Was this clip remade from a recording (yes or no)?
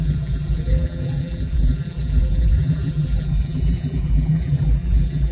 yes